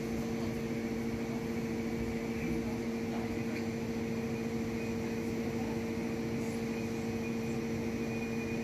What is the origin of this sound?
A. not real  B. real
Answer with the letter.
B